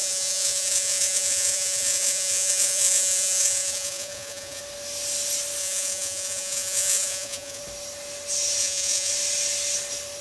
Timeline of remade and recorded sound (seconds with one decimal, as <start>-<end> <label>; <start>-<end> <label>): 0.0-4.6 remade; 4.6-5.6 recorded; 5.6-7.6 remade; 7.6-8.6 recorded; 8.6-9.1 remade; 9.1-10.2 recorded